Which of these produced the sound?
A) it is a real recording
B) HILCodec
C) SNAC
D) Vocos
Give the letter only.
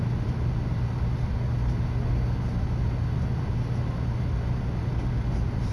A